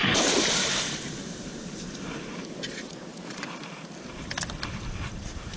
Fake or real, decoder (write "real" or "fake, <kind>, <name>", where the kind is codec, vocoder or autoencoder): fake, vocoder, BigVGAN v2